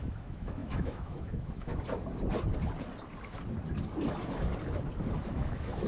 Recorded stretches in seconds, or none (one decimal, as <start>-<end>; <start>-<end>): 1.7-5.2